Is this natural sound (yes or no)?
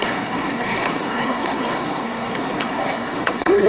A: no